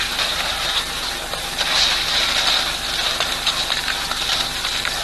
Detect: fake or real real